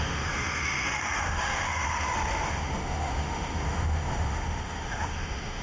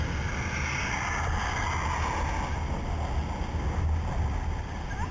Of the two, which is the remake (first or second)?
first